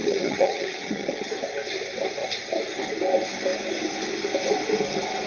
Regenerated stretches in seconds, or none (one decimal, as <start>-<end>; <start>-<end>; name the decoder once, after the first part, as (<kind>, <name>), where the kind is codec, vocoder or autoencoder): 0.0-1.3 (vocoder, HiFi-GAN)